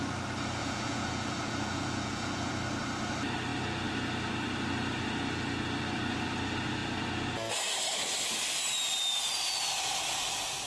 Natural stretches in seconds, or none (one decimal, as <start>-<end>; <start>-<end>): 0.0-0.6; 2.5-10.7